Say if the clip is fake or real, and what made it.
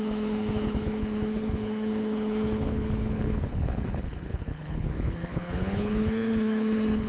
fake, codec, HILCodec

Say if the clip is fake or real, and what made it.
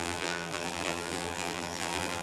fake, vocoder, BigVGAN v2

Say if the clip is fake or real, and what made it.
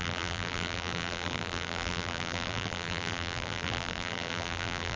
fake, vocoder, BigVGAN v2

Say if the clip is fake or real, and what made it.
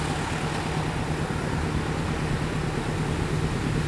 real